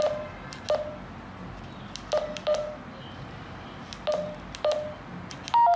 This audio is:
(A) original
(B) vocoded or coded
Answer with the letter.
A